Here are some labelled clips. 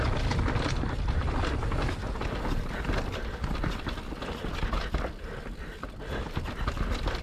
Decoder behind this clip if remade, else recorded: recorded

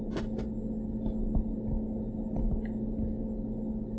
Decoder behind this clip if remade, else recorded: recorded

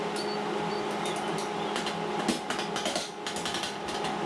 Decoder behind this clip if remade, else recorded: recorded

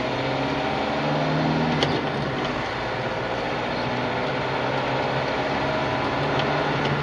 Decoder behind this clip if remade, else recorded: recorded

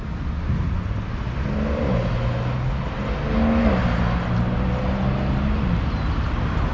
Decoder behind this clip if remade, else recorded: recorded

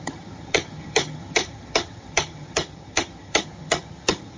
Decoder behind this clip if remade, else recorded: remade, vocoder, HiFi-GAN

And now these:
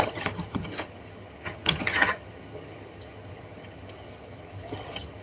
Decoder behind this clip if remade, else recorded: remade, vocoder, HiFi-GAN